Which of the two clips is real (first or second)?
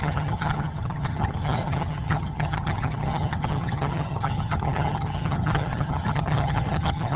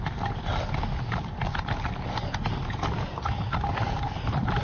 second